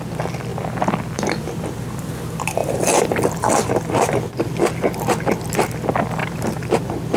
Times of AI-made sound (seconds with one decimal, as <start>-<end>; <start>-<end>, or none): 0.5-2.1; 2.6-4.1; 6.2-6.8